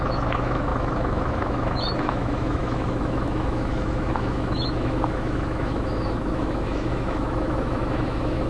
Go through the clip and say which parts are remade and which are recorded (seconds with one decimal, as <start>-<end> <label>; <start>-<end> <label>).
0.0-8.5 remade